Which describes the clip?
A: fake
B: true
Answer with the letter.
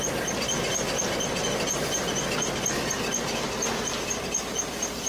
B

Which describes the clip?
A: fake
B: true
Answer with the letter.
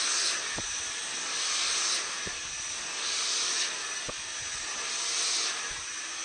B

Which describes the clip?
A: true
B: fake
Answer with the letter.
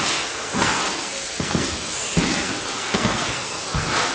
B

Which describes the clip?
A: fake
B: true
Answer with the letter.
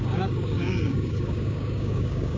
A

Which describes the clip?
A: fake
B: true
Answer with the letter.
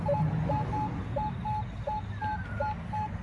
B